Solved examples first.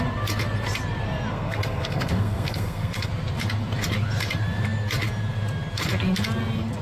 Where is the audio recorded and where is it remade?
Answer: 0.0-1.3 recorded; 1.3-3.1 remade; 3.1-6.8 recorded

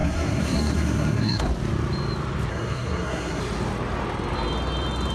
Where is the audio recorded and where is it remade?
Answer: 0.0-1.4 remade; 1.4-2.5 recorded; 2.5-3.4 remade; 3.4-5.1 recorded

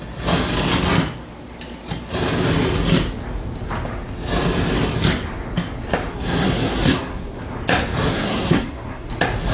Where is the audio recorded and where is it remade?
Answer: 0.0-6.1 recorded; 6.1-7.4 remade; 7.4-8.1 recorded; 8.1-9.1 remade; 9.1-9.5 recorded

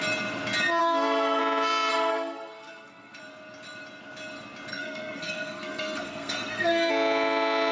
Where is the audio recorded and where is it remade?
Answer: 0.0-0.8 recorded; 0.8-1.4 remade; 1.4-1.9 recorded; 1.9-3.2 remade; 3.2-4.7 recorded; 4.7-6.9 remade; 6.9-7.7 recorded

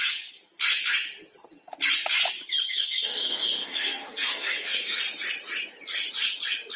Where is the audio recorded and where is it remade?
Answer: 0.0-2.7 recorded; 2.7-5.0 remade; 5.0-6.8 recorded

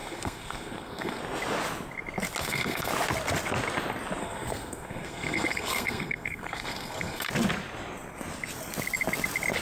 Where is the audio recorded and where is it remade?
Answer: 0.0-1.2 remade; 1.2-2.4 recorded; 2.4-2.9 remade; 2.9-4.2 recorded; 4.2-7.3 remade; 7.3-9.6 recorded

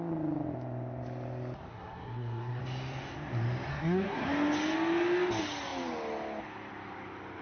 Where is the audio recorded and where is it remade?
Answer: 0.0-1.7 recorded; 1.7-2.6 remade; 2.6-3.7 recorded; 3.7-4.3 remade; 4.3-7.4 recorded

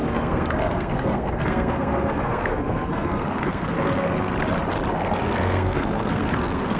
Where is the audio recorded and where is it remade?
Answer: 0.0-4.3 remade; 4.3-4.9 recorded; 4.9-6.8 remade